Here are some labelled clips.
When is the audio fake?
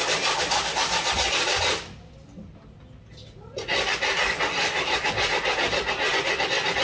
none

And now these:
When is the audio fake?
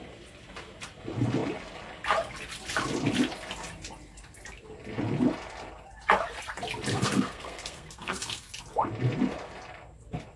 6.9-8.6 (codec, SNAC)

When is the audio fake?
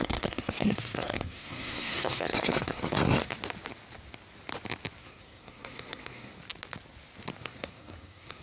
0.0-3.3 (codec, SNAC); 5.0-6.4; 7.4-8.4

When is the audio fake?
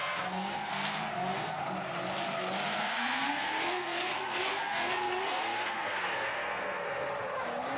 0.0-1.6 (codec, SNAC); 2.7-7.1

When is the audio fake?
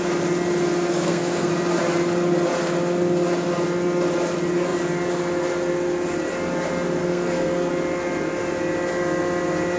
0.9-1.5 (codec, SNAC); 7.0-7.7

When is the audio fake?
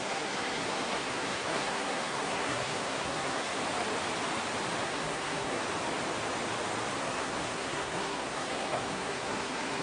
0.0-3.6 (codec, SNAC); 4.8-5.6; 7.0-9.8